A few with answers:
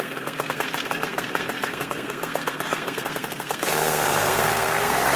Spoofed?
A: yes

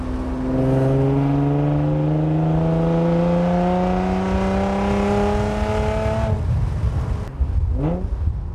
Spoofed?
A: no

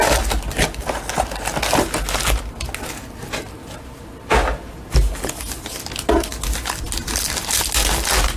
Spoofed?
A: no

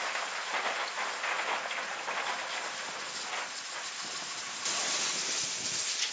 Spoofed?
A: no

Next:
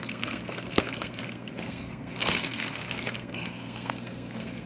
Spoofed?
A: yes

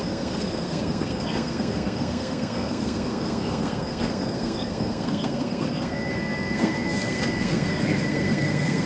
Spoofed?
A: yes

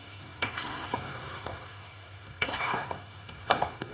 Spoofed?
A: yes